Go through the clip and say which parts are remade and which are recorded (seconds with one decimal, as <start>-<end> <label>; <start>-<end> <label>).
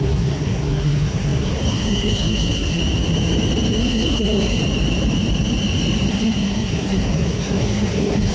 0.0-2.8 remade; 2.8-3.8 recorded; 3.8-4.6 remade; 4.6-6.1 recorded; 6.1-8.3 remade